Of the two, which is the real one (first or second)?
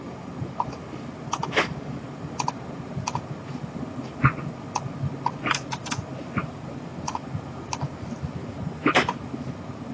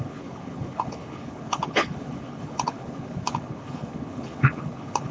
first